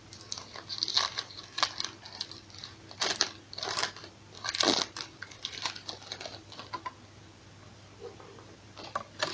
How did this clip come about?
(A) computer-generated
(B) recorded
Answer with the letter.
B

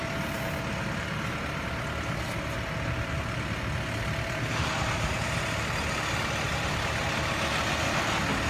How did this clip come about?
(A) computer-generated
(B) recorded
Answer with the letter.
B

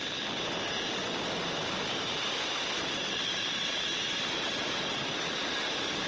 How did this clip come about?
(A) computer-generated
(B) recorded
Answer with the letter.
B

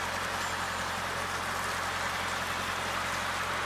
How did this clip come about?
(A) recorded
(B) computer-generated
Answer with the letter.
A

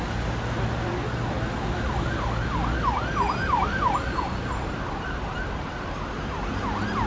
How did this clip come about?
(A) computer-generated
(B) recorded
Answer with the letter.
B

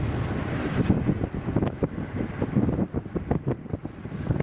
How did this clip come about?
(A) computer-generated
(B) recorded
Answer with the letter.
B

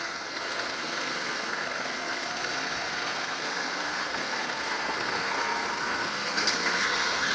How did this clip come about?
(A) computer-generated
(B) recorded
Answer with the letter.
A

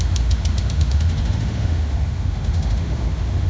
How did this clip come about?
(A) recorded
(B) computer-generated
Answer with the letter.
B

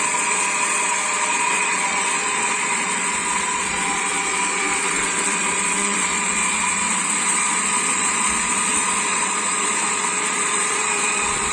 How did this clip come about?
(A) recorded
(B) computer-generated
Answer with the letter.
B